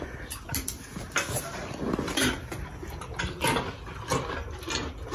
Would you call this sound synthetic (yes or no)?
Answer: no